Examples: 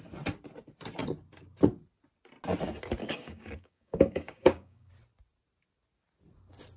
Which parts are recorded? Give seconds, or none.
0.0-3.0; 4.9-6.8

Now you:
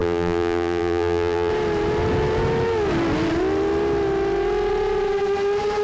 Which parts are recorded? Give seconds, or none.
1.5-5.8

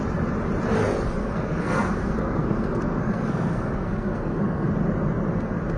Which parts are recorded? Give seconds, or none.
0.0-1.2; 4.7-5.8

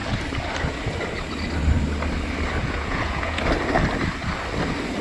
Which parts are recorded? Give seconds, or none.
0.0-2.6; 3.4-5.0

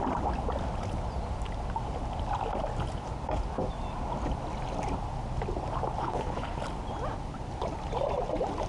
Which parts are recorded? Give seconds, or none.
0.0-6.0; 6.6-8.7

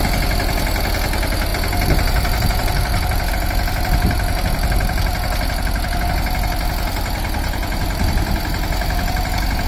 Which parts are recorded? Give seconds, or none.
0.0-1.5; 3.3-9.7

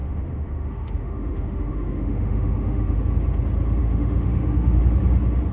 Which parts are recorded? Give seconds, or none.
3.0-3.8; 4.8-5.5